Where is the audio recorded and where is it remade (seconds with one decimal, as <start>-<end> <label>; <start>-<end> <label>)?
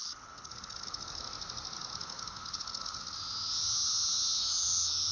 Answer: 0.0-1.2 remade; 1.2-1.9 recorded; 1.9-3.0 remade; 3.0-5.1 recorded